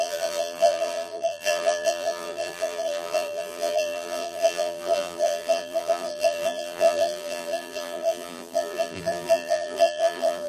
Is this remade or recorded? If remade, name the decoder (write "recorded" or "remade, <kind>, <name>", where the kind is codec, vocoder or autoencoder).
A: remade, vocoder, BigVGAN v2